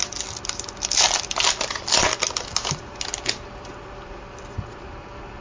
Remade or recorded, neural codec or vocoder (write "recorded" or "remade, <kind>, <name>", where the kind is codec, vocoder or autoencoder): recorded